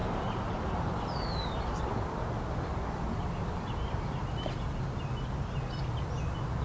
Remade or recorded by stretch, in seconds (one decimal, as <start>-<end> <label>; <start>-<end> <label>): 0.0-1.8 remade; 1.8-6.6 recorded